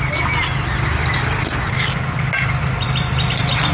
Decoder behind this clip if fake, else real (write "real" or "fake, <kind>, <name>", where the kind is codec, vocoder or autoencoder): real